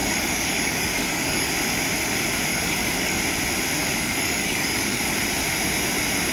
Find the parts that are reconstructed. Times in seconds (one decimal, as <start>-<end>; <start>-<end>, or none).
0.0-1.5; 2.5-3.2; 3.8-5.0

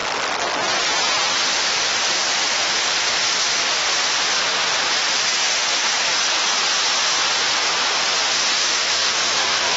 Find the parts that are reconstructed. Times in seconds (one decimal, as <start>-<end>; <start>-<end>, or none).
8.6-9.8

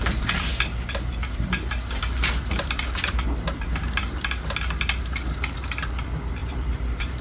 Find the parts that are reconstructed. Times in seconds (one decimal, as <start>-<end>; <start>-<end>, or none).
6.4-7.2